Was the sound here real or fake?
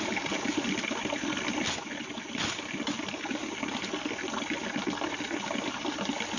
real